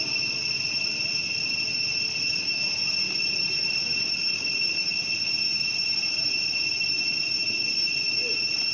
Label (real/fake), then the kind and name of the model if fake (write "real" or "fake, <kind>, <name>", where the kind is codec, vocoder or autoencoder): real